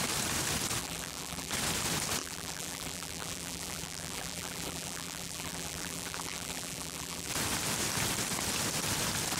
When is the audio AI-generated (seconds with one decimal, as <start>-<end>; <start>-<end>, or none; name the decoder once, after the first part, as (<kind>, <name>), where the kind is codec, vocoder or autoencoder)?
0.8-1.5 (vocoder, BigVGAN v2); 2.2-7.3